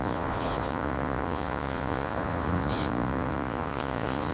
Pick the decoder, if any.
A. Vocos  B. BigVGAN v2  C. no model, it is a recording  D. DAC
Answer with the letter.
A